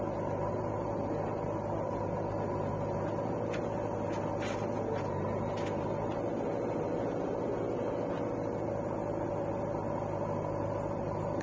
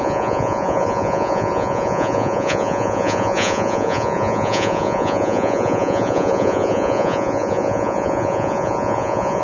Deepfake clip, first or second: second